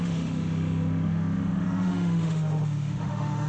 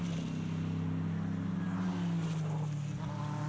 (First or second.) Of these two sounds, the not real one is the first